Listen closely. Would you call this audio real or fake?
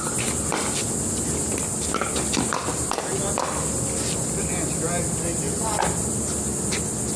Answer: real